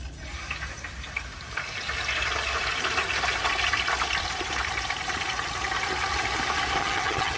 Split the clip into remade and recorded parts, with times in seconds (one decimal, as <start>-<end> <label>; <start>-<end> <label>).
0.0-6.8 recorded; 6.8-7.4 remade